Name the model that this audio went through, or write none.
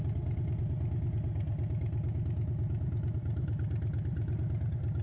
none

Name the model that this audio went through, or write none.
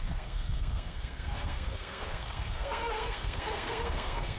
codec, SNAC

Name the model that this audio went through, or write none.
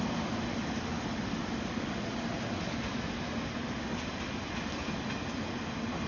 none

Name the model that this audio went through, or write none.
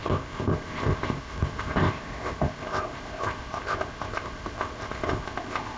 codec, ZipCodec